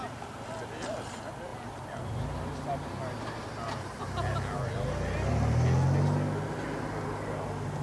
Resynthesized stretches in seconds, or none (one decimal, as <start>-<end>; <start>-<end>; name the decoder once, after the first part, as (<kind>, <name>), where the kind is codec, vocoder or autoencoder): none

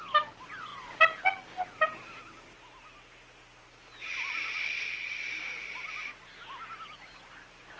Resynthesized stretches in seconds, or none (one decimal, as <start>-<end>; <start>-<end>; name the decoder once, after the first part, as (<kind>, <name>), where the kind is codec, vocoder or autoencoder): none

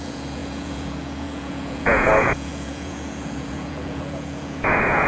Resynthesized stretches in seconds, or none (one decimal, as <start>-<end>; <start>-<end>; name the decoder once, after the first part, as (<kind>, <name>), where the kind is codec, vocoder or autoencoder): 0.0-5.1 (vocoder, Vocos)